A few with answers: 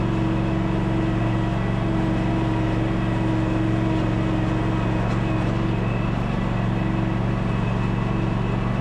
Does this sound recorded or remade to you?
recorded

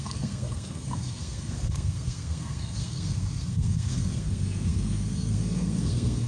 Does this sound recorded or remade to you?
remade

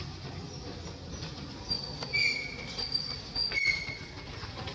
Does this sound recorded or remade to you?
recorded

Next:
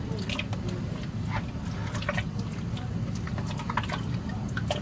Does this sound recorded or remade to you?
recorded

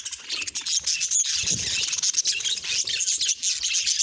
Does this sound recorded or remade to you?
recorded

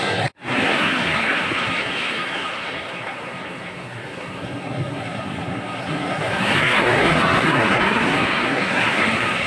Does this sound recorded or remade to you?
remade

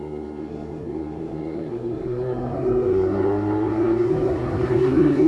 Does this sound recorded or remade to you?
remade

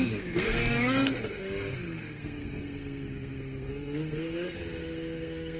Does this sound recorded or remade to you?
remade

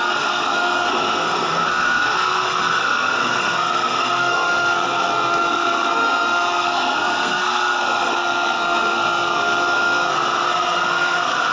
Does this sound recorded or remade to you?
remade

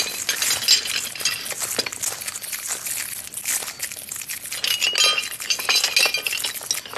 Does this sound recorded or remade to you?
recorded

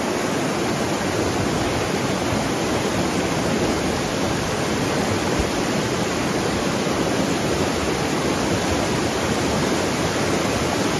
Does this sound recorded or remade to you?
recorded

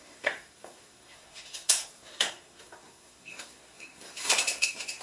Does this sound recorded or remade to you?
remade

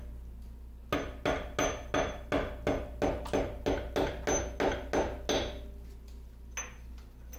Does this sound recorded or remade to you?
recorded